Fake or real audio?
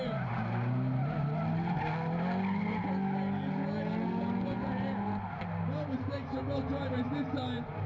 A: real